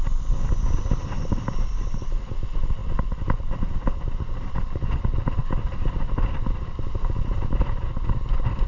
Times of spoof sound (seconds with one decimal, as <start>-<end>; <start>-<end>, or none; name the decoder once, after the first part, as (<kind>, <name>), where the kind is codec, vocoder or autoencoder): none